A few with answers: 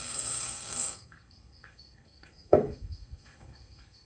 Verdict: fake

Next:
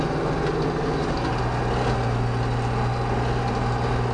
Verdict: real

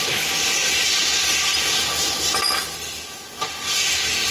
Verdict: real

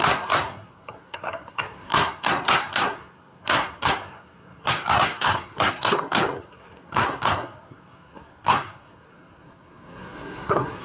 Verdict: fake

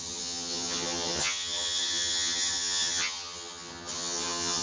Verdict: fake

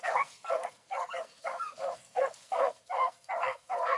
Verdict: fake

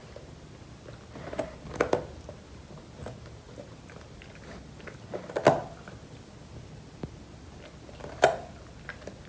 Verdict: real